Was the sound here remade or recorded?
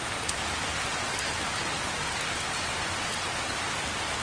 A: recorded